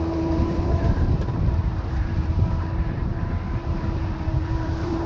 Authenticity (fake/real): fake